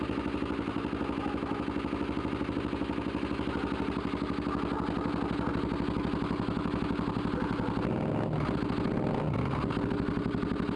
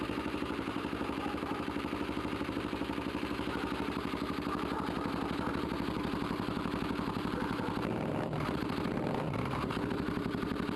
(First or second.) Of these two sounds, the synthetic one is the second